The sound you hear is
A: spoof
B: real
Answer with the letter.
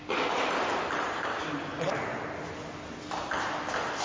B